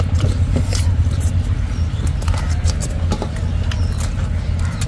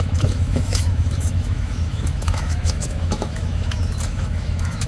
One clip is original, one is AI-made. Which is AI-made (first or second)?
second